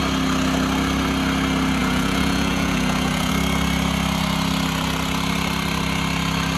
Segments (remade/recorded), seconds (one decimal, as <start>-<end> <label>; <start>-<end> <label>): 0.0-1.8 recorded; 1.8-3.3 remade; 3.3-6.6 recorded